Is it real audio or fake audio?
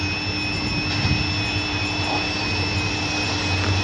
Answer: real